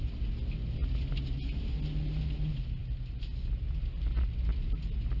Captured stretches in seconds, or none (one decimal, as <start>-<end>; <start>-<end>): 0.0-5.2

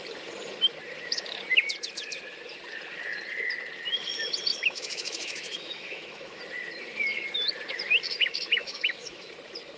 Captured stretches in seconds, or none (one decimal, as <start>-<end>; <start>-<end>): 0.0-4.5; 6.4-8.6; 9.3-9.8

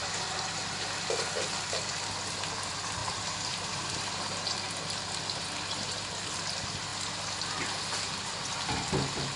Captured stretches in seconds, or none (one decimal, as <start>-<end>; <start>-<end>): 0.0-3.0; 4.0-9.4

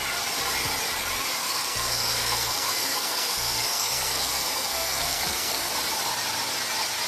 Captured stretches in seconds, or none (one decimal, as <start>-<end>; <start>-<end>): 0.0-1.4; 5.7-7.1

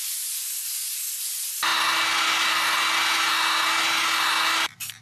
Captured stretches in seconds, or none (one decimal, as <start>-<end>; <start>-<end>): 0.0-5.0

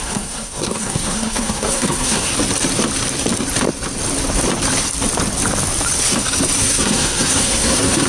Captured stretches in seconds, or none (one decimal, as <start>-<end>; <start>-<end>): 2.3-6.6

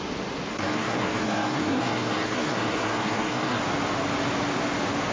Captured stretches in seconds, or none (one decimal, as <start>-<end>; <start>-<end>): 0.0-0.5; 3.6-5.1

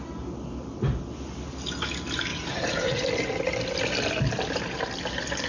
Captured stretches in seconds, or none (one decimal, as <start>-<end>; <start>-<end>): 0.0-2.3; 3.0-5.5